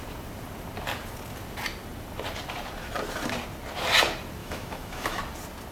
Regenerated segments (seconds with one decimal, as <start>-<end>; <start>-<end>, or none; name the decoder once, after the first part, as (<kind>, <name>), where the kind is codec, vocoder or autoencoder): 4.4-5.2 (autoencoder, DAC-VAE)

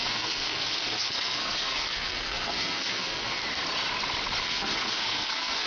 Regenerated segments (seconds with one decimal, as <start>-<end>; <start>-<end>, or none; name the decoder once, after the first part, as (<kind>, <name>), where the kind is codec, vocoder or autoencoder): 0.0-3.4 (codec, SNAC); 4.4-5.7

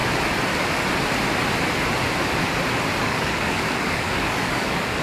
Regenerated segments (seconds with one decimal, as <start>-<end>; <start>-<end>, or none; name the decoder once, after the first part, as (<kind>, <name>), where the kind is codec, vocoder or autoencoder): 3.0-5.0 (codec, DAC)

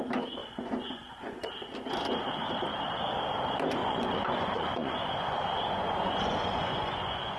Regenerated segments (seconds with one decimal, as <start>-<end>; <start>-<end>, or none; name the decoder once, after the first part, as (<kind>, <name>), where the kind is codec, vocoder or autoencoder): 0.4-1.5 (vocoder, Vocos); 3.8-7.4

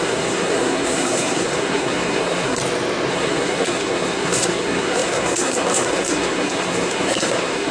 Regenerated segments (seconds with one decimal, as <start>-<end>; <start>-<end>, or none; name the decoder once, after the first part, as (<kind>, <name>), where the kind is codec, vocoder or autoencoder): 0.0-2.6 (codec, SNAC); 3.1-7.7